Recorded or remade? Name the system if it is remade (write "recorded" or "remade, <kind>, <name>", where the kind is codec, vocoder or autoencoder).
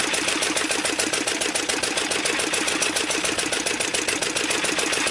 recorded